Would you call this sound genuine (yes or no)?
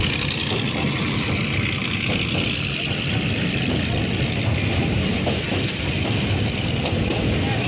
yes